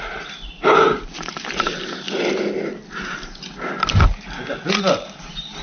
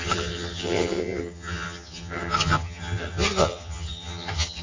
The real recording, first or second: first